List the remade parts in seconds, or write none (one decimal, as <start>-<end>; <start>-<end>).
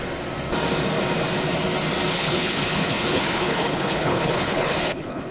2.1-5.3